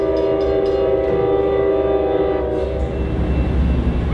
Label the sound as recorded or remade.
recorded